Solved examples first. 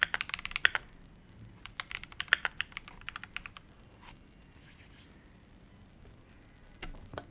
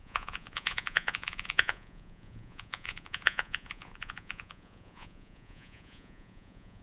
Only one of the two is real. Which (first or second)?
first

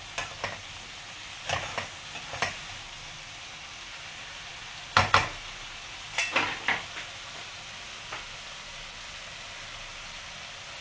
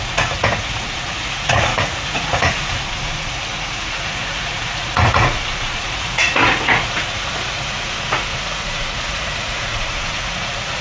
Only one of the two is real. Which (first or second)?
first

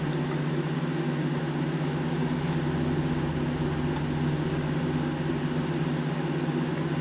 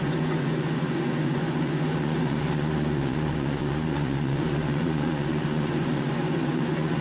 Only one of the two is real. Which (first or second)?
first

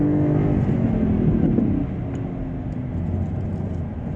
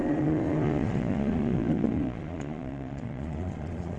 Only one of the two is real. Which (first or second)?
first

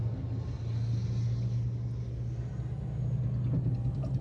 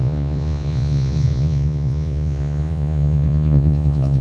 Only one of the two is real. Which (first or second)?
first